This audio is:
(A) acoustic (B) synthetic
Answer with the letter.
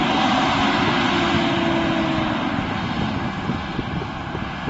A